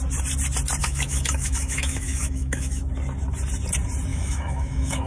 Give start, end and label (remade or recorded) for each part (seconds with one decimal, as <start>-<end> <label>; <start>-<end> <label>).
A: 0.0-0.8 recorded; 0.8-2.8 remade; 2.8-4.1 recorded; 4.1-5.1 remade